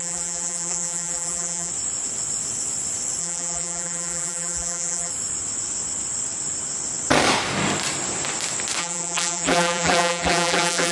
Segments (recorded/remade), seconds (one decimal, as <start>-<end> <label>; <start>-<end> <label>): 0.0-1.7 remade; 1.7-3.2 recorded; 3.2-5.1 remade; 5.1-8.8 recorded; 8.8-10.9 remade